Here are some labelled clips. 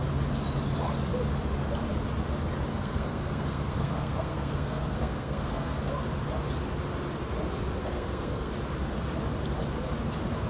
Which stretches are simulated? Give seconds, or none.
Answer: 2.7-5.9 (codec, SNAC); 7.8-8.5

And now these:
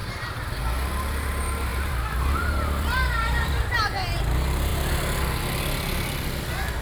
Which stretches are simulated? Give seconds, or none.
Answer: 0.0-0.6 (vocoder, BigVGAN v2); 1.7-3.7

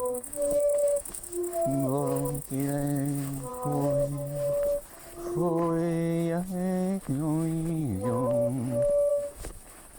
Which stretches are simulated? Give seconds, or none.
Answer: 0.0-1.4 (autoencoder, DAC-VAE); 2.4-3.5; 7.0-7.8; 9.1-10.0

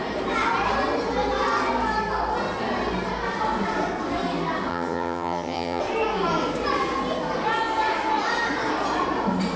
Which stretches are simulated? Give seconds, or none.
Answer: 4.7-5.8 (vocoder, HiFi-GAN)

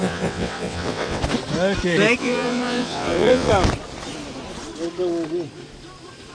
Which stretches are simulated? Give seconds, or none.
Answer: 0.0-1.2 (vocoder, WaveNeXt); 2.2-3.5

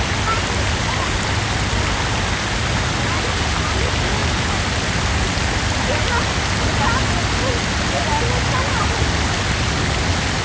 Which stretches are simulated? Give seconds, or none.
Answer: none

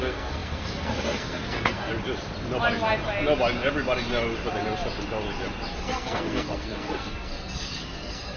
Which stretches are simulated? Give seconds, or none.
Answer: 0.0-1.9 (codec, SNAC); 5.7-8.4